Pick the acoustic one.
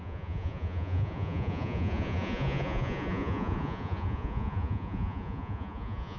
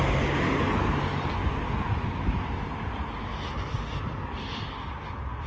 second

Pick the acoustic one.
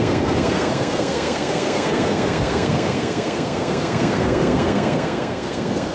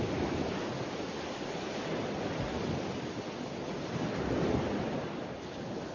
second